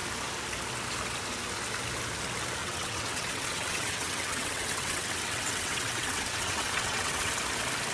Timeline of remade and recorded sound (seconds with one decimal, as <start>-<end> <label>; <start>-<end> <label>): 0.0-2.6 recorded; 2.6-7.3 remade; 7.3-7.9 recorded

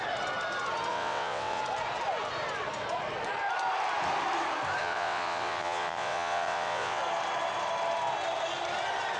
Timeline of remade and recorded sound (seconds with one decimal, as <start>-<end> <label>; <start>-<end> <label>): 0.0-0.9 recorded; 0.9-1.6 remade; 1.6-4.8 recorded; 4.8-7.0 remade; 7.0-9.2 recorded

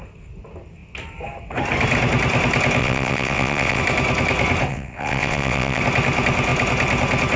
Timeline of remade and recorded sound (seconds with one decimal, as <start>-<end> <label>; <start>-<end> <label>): 0.0-2.8 recorded; 2.8-3.8 remade; 3.8-4.7 recorded; 4.7-5.8 remade; 5.8-7.4 recorded

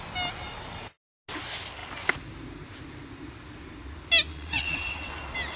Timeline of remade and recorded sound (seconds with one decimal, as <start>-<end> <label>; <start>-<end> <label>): 0.0-4.3 recorded; 4.3-5.1 remade; 5.1-5.6 recorded

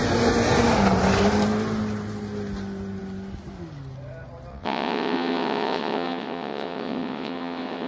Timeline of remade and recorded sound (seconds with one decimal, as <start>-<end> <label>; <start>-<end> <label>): 0.0-4.5 recorded; 4.5-7.9 remade

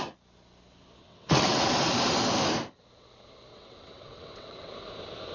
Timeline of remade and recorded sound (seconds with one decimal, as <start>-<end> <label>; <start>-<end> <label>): 0.0-1.0 recorded; 1.0-1.7 remade; 1.7-3.5 recorded; 3.5-4.7 remade; 4.7-5.3 recorded

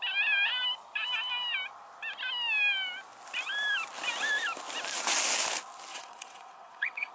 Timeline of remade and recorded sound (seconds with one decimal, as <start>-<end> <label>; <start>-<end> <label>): 0.0-5.9 recorded; 5.9-7.1 remade

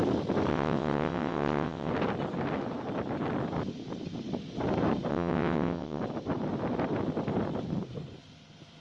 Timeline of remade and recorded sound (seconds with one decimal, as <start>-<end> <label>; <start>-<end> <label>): 0.0-0.5 recorded; 0.5-1.9 remade; 1.9-5.1 recorded; 5.1-6.0 remade; 6.0-8.8 recorded